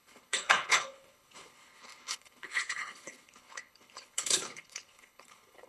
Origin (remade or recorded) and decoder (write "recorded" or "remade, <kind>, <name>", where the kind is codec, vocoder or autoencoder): remade, codec, HILCodec